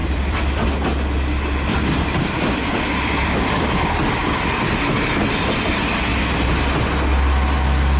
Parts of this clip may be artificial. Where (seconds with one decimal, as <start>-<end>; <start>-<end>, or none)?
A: 0.0-0.7; 1.7-3.6